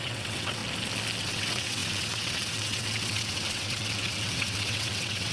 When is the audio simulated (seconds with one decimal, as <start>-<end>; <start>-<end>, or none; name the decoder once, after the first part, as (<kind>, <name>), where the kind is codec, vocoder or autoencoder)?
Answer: 0.0-0.6 (vocoder, WaveNeXt); 1.2-5.3